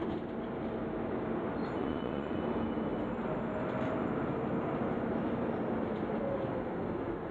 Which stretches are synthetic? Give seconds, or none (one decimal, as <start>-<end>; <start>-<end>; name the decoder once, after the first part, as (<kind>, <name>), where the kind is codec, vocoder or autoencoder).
1.8-2.4 (vocoder, Vocos)